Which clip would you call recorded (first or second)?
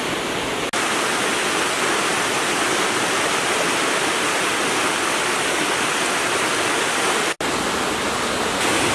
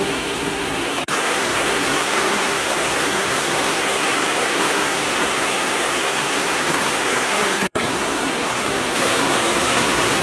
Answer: first